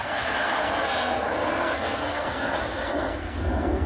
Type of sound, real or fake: fake